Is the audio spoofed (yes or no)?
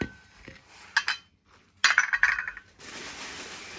no